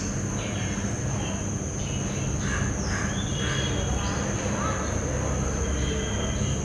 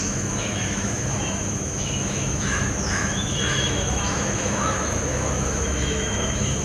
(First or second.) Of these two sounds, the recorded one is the first